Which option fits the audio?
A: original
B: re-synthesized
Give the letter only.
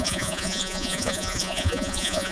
B